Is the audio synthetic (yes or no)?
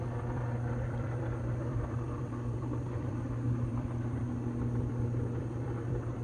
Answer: yes